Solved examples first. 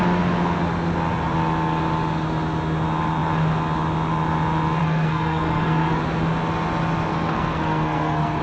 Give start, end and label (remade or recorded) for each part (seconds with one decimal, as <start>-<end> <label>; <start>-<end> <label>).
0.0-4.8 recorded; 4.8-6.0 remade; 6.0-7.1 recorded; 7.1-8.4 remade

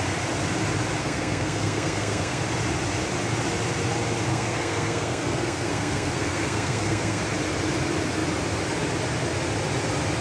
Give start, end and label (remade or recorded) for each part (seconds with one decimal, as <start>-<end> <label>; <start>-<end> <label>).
0.0-1.0 recorded; 1.0-2.4 remade; 2.4-4.3 recorded; 4.3-7.2 remade; 7.2-10.2 recorded

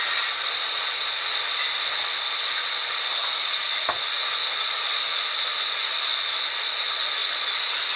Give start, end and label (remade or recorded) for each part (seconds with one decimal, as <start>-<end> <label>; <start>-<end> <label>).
0.0-8.0 recorded